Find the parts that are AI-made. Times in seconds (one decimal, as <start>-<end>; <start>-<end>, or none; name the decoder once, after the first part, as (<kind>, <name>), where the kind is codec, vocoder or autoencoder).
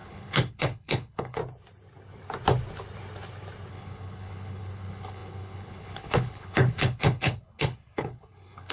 0.0-1.4 (codec, HILCodec); 3.7-8.7